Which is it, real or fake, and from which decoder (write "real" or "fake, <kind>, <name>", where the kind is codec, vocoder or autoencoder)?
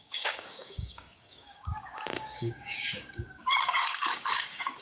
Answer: fake, codec, DAC